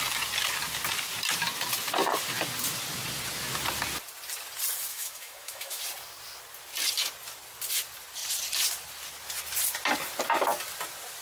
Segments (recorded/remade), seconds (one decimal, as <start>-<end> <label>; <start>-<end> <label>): 0.0-4.9 recorded; 4.9-5.8 remade; 5.8-11.2 recorded